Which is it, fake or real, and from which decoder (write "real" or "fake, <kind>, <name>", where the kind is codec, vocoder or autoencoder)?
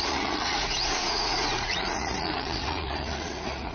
fake, vocoder, Vocos